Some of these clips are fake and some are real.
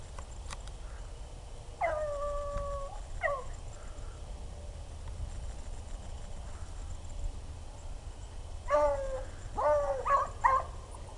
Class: real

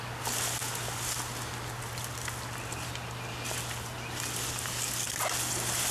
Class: real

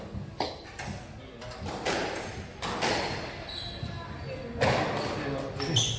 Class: real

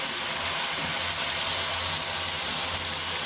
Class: real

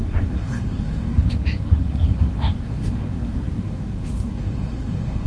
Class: fake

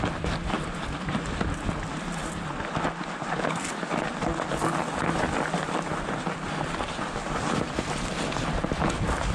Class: real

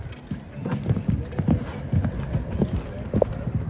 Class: real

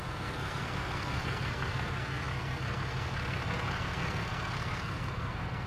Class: fake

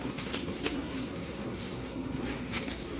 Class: fake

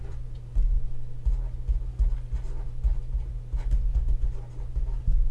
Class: real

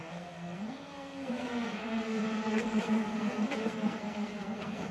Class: fake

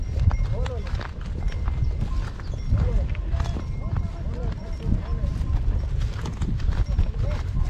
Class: real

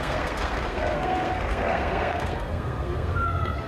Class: fake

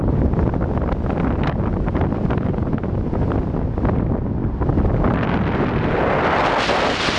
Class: real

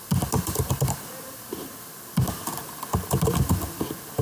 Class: real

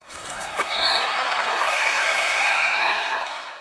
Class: fake